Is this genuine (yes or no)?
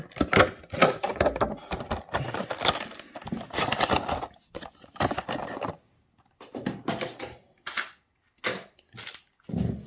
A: yes